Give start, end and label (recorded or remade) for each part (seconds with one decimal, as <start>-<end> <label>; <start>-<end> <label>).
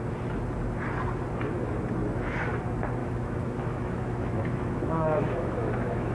0.0-3.0 recorded; 3.0-6.1 remade